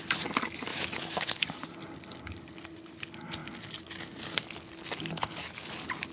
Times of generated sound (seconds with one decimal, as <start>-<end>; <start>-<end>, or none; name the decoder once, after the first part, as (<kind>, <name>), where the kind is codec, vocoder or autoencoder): 0.7-1.4 (autoencoder, DAC-VAE)